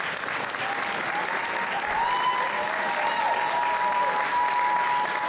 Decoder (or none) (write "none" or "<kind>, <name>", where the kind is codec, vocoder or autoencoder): none